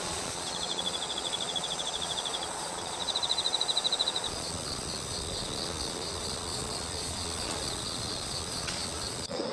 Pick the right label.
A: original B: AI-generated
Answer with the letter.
B